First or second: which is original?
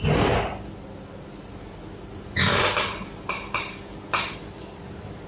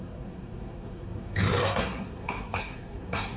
first